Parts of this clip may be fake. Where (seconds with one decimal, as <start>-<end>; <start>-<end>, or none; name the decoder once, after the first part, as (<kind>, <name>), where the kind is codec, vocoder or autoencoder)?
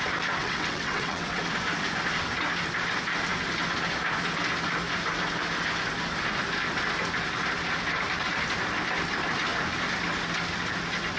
0.4-1.4 (vocoder, WaveNeXt)